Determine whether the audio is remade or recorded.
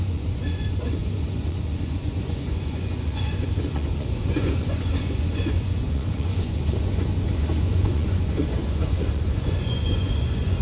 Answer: remade